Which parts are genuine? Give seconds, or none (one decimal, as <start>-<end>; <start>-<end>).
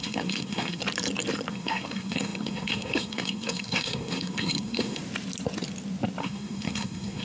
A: 0.8-1.5; 5.0-6.2